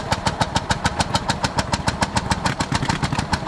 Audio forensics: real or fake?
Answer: fake